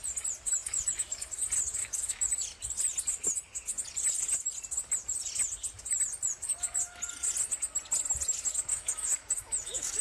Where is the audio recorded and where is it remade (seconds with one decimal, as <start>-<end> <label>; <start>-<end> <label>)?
0.0-0.6 recorded; 0.6-1.4 remade; 1.4-1.8 recorded; 1.8-2.3 remade; 2.3-8.7 recorded; 8.7-10.0 remade